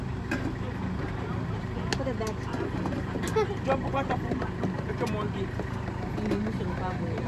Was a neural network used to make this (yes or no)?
no